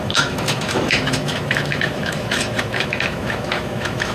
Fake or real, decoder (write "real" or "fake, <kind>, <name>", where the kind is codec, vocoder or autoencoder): fake, autoencoder, DAC-VAE